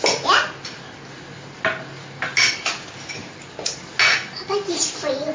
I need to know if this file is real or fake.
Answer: real